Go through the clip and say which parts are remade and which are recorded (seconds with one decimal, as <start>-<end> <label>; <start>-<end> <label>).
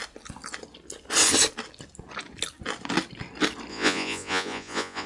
0.0-3.7 recorded; 3.7-5.1 remade